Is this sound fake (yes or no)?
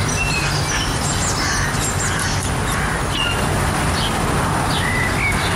no